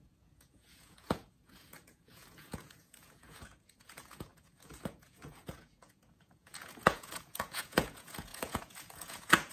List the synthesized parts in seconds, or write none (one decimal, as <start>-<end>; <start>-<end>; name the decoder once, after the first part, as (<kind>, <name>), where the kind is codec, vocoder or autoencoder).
0.0-9.5 (vocoder, Vocos)